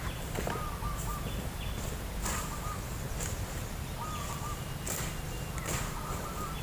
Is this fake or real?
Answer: real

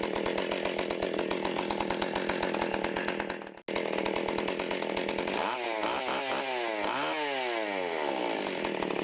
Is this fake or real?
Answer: real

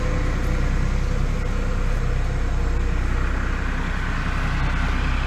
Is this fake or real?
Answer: real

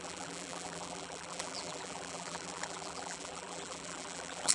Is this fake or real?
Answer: fake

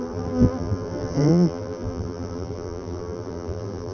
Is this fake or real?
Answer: fake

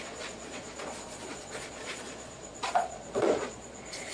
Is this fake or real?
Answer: fake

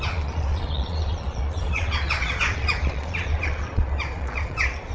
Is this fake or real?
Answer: fake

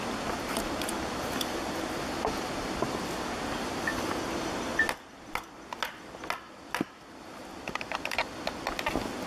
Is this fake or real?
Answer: real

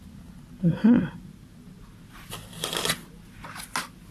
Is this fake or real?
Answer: real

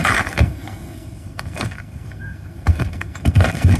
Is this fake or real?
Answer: fake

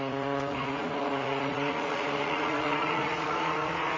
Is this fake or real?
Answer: fake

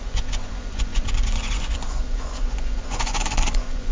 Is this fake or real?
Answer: fake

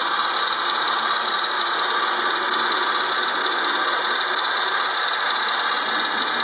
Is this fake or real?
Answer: real